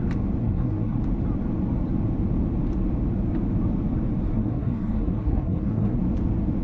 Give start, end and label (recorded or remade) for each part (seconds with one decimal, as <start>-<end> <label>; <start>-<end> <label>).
0.0-0.4 recorded; 0.4-1.0 remade; 1.0-4.3 recorded; 4.3-6.0 remade; 6.0-6.6 recorded